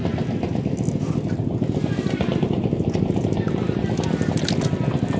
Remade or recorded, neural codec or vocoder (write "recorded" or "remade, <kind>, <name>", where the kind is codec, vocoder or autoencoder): recorded